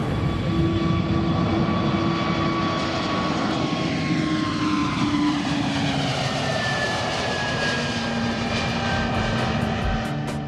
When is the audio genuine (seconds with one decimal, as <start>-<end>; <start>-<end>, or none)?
0.0-4.8; 9.8-10.5